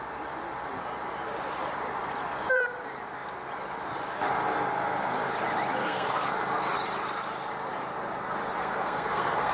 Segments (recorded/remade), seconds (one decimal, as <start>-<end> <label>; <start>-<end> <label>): 0.0-5.8 recorded; 5.8-6.3 remade; 6.3-8.6 recorded; 8.6-9.5 remade